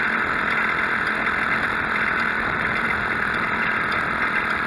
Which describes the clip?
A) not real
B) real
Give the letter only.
B